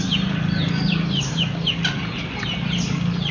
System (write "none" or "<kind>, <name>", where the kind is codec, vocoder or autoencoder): none